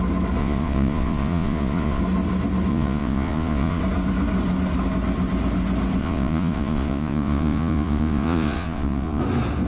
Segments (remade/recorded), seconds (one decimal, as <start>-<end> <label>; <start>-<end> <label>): 0.0-0.4 recorded; 0.4-2.0 remade; 2.0-2.7 recorded; 2.7-3.8 remade; 3.8-6.0 recorded; 6.0-9.2 remade; 9.2-9.7 recorded